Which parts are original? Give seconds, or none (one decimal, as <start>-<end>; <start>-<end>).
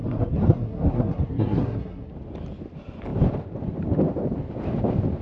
2.1-5.2